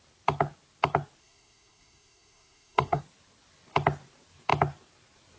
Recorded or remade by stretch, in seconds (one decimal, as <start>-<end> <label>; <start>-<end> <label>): 0.0-1.2 recorded; 1.2-3.0 remade; 3.0-5.4 recorded